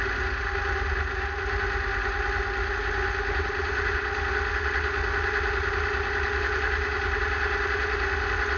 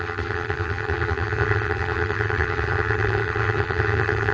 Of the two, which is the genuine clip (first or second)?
first